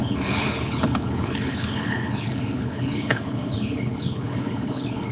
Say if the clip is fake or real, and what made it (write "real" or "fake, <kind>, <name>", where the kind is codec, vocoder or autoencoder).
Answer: fake, codec, HILCodec